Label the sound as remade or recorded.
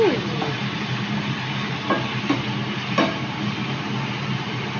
recorded